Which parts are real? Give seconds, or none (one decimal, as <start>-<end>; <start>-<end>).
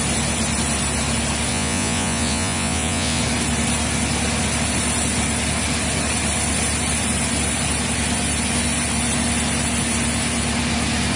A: 0.0-1.5; 3.2-11.2